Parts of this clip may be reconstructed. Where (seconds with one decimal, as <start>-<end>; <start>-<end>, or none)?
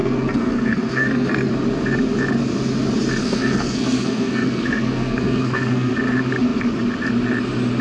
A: 0.0-1.5; 3.2-5.9